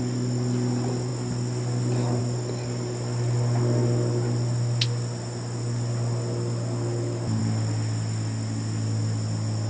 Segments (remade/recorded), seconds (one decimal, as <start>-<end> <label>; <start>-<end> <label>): 0.0-9.7 recorded